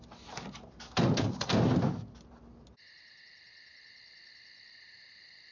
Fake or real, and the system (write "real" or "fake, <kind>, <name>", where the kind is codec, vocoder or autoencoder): real